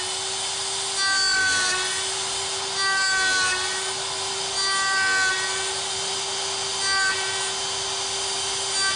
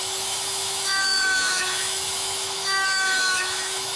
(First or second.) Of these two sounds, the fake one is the second